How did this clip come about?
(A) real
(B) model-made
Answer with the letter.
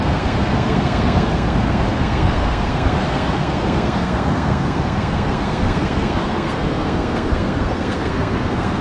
B